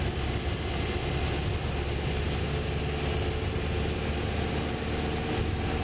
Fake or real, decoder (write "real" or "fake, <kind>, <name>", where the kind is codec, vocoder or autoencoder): real